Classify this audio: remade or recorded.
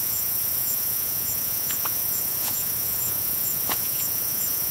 remade